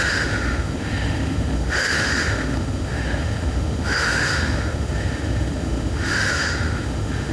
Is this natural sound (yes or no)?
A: no